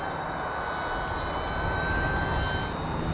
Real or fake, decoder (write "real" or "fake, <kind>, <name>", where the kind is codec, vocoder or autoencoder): real